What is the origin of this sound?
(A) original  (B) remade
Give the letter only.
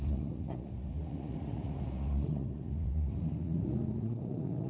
B